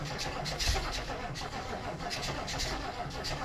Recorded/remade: remade